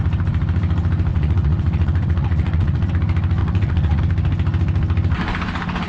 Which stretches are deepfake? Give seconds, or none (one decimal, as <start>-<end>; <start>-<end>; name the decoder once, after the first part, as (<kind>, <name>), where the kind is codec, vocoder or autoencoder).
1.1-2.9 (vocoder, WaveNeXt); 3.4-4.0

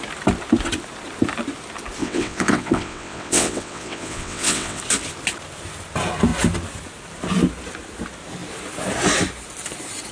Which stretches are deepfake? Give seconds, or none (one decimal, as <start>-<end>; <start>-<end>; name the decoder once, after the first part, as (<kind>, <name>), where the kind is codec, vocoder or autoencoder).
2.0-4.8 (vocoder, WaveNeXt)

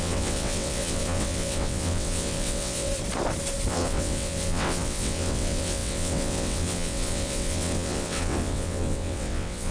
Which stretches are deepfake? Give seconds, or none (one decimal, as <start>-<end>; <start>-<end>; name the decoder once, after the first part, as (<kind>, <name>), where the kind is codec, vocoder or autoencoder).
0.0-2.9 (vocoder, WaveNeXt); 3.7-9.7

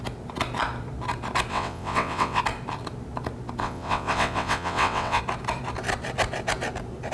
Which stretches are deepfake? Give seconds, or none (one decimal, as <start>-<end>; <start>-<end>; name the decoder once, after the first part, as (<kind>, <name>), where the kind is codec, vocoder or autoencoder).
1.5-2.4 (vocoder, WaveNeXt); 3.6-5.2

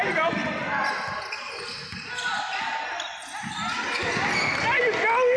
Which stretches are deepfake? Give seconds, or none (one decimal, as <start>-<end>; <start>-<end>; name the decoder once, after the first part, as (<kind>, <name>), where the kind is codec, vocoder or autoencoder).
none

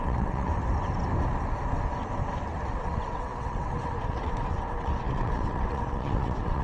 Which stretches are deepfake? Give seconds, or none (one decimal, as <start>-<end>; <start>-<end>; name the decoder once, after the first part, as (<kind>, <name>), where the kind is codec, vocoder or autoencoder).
0.0-0.5 (vocoder, WaveNeXt); 2.7-6.6